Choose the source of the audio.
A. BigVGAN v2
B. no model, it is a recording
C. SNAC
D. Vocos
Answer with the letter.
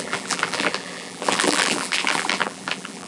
A